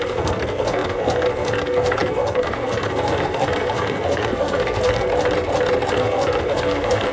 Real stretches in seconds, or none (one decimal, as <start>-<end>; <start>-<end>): 5.1-5.9